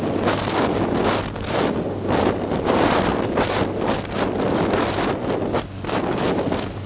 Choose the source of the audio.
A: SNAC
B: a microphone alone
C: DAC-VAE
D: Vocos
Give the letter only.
B